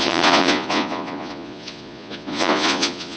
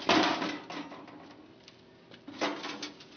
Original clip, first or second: second